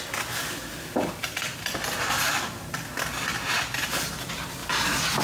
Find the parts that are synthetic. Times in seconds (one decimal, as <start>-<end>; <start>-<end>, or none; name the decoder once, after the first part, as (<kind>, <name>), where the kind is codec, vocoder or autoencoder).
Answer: 1.2-2.6 (vocoder, BigVGAN v2); 3.3-4.0; 4.6-5.2

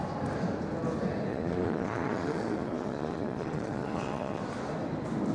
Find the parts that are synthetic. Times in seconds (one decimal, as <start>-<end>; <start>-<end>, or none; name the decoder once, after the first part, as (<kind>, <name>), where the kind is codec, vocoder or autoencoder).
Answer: 1.3-4.4 (vocoder, Vocos)

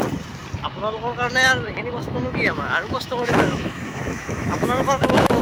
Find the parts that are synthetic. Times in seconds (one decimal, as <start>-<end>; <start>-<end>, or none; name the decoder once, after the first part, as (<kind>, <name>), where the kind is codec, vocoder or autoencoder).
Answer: 2.0-5.4 (autoencoder, DAC-VAE)

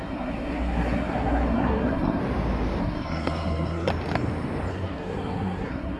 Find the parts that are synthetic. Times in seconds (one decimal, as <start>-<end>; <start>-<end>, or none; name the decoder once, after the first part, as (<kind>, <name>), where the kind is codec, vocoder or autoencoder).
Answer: 0.0-2.2 (codec, SNAC); 2.8-3.9; 4.7-6.0

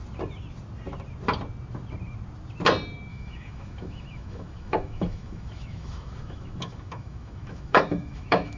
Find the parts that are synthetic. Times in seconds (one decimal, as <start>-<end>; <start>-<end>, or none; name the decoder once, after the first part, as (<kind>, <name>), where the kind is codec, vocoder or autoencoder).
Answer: 3.1-8.6 (autoencoder, DAC-VAE)